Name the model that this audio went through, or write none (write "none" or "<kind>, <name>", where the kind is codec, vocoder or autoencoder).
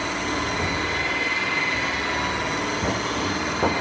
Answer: none